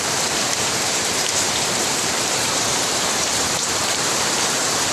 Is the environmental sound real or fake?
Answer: fake